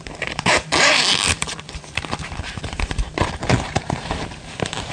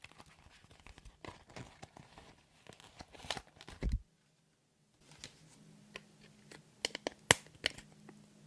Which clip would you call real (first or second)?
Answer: second